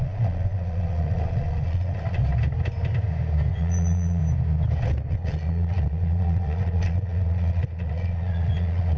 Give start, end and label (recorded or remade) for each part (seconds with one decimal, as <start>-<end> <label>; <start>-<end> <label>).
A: 0.0-2.2 remade; 2.2-3.5 recorded; 3.5-4.2 remade; 4.2-5.1 recorded; 5.1-9.0 remade